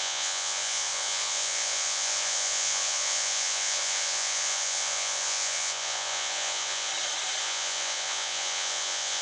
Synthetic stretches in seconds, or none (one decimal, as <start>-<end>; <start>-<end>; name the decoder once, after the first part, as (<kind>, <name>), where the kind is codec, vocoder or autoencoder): 0.0-6.9 (vocoder, Vocos); 7.4-9.2